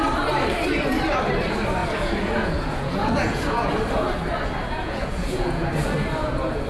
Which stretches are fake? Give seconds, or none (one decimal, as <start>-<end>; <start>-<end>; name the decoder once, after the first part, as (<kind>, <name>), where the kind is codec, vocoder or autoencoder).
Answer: 1.8-3.7 (vocoder, Vocos); 4.6-5.7